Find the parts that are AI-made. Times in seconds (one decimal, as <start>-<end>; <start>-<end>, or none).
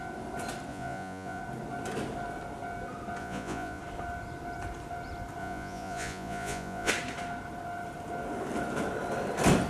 0.7-1.4; 3.2-3.8; 5.4-6.9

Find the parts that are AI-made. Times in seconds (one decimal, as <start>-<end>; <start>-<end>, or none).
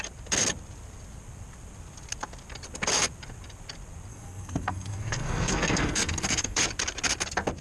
4.1-6.6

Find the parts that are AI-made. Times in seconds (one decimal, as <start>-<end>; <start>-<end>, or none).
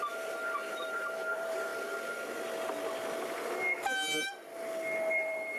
0.0-1.7; 5.1-5.6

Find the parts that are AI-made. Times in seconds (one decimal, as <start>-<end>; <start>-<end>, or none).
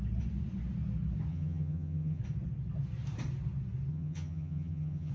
1.3-2.2; 3.9-5.1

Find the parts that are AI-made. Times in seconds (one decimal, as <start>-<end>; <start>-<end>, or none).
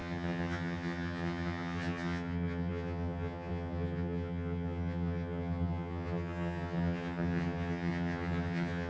0.0-8.9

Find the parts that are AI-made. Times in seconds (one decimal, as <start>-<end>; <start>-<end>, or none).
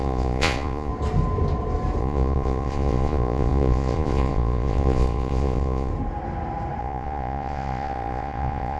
0.0-0.9; 2.0-5.9; 6.8-8.8